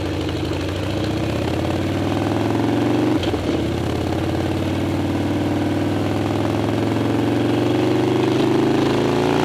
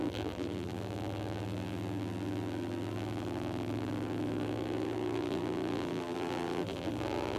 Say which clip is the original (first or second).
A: first